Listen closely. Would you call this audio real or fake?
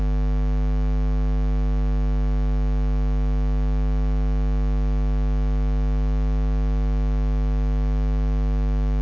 real